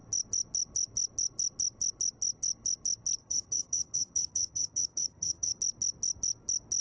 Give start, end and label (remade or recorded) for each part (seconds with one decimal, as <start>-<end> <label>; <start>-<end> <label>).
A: 0.0-3.2 recorded; 3.2-5.6 remade; 5.6-6.8 recorded